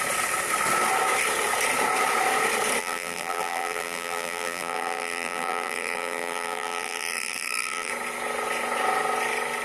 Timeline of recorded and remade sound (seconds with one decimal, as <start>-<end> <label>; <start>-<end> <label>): 0.0-2.8 recorded; 2.8-7.9 remade; 7.9-9.6 recorded